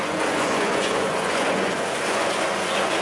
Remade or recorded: remade